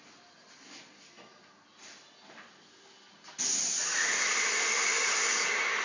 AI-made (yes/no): no